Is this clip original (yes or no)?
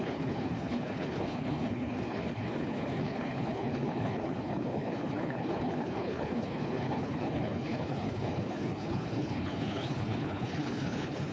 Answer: no